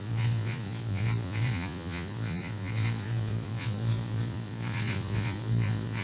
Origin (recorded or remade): remade